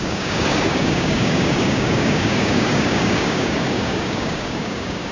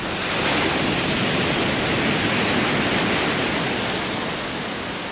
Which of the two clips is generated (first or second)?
first